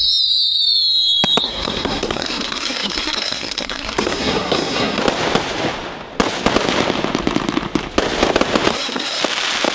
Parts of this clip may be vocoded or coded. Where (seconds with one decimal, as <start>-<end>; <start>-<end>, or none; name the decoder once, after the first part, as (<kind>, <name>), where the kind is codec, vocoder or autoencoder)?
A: 1.4-5.0 (codec, SNAC); 8.7-9.2